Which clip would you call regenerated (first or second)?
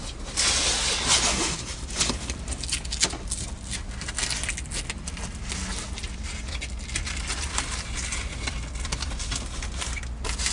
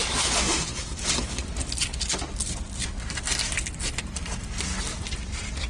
second